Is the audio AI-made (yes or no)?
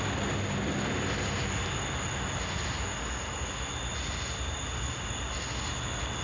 no